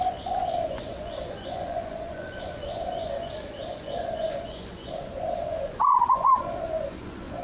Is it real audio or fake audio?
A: fake